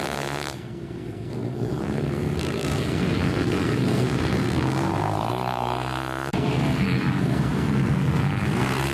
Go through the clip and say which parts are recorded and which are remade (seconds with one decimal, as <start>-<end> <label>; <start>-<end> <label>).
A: 0.0-8.9 remade